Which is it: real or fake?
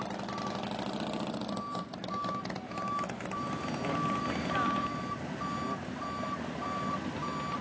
real